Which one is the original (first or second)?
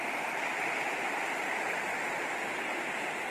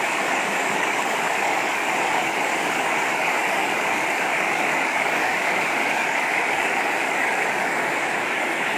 first